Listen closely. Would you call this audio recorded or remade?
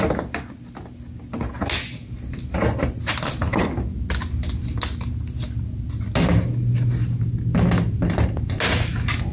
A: recorded